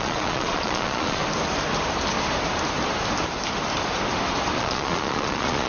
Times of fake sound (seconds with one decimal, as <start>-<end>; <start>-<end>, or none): 0.0-1.2; 4.6-5.7